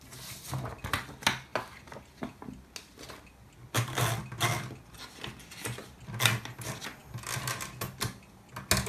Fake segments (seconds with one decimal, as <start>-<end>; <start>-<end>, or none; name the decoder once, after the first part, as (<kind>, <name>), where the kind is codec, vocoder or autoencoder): none